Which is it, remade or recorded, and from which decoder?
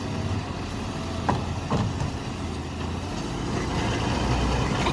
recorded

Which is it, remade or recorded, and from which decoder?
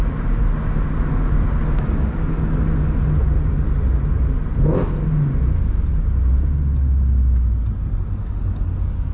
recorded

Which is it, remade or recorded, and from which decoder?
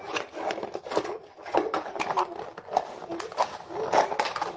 recorded